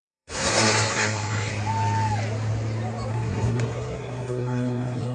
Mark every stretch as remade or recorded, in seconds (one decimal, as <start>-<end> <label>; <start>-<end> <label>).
0.0-1.5 remade; 1.5-3.1 recorded; 3.1-5.1 remade